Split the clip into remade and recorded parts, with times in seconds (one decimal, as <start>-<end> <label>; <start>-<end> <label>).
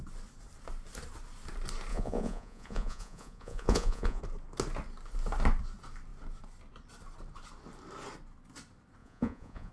0.0-1.9 recorded; 1.9-4.2 remade; 4.2-9.0 recorded; 9.0-9.7 remade